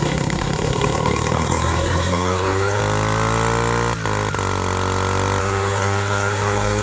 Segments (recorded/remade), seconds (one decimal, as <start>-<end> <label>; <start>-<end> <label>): 0.0-2.8 remade; 2.8-5.4 recorded; 5.4-6.8 remade